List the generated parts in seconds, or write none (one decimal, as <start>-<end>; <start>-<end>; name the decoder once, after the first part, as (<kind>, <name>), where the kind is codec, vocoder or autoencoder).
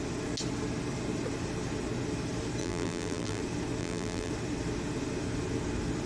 2.6-3.4 (vocoder, BigVGAN v2); 3.8-4.3